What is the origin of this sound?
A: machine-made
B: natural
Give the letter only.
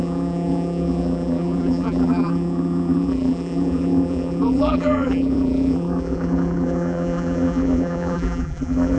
A